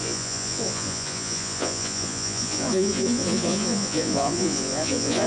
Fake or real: fake